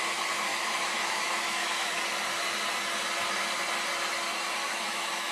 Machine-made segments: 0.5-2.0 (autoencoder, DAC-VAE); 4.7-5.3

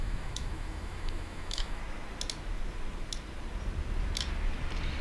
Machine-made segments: 0.0-1.8 (autoencoder, DAC-VAE)

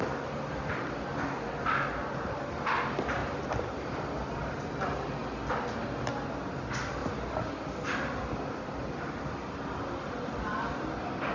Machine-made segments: 3.2-4.7 (vocoder, BigVGAN v2)